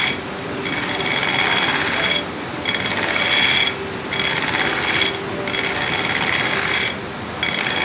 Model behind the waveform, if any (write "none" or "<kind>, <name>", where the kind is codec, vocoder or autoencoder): none